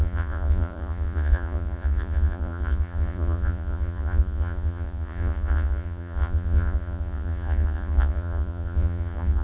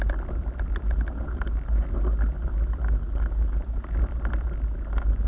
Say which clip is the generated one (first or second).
first